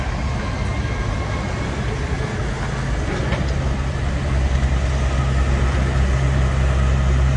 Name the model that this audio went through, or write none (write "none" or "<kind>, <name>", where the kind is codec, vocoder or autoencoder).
none